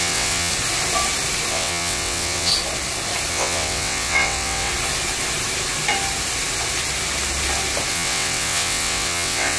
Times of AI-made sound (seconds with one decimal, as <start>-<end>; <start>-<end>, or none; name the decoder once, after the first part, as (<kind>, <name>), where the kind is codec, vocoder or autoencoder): 0.0-0.5 (vocoder, WaveNeXt); 1.5-2.5; 3.3-4.7; 7.9-9.6